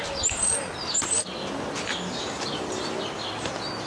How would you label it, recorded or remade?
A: recorded